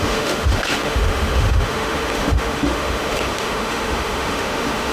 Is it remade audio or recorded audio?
remade